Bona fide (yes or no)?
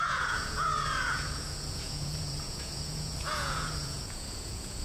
no